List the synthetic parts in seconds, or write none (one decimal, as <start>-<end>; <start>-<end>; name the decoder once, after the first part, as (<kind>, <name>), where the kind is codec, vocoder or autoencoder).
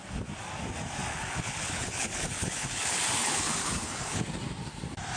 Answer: 1.1-4.2 (codec, HILCodec)